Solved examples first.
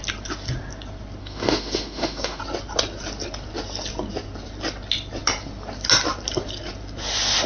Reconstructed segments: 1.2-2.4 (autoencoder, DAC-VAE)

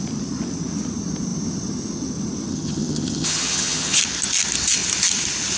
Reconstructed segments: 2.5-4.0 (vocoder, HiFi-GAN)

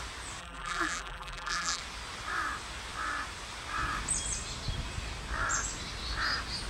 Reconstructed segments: 0.4-1.8 (vocoder, BigVGAN v2)